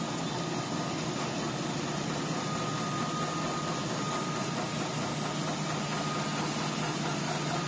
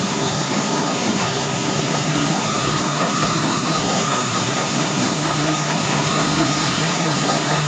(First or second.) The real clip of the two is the first